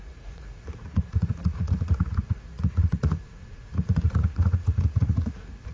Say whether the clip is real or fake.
fake